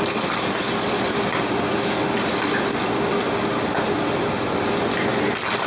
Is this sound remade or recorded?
recorded